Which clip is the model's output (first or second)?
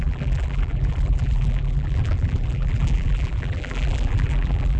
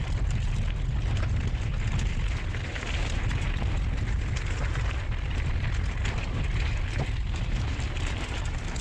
first